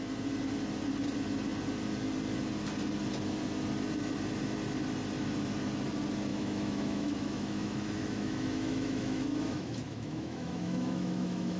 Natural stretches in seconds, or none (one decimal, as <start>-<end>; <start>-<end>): 0.0-6.3